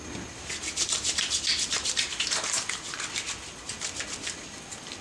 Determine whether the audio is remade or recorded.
recorded